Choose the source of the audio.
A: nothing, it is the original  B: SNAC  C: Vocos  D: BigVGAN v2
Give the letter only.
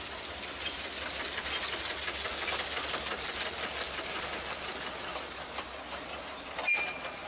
A